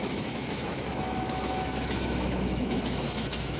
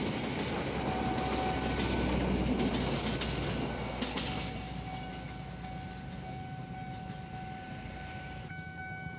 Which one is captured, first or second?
second